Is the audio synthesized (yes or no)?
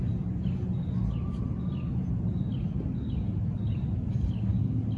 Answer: no